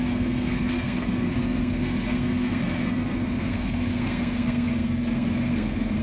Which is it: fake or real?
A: fake